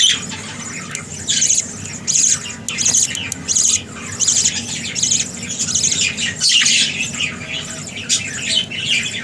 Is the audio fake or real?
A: real